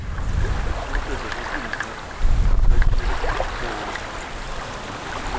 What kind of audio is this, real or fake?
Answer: real